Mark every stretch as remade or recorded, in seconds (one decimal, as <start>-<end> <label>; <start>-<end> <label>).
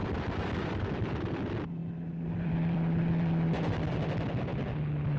0.0-0.6 recorded; 0.6-4.5 remade; 4.5-5.2 recorded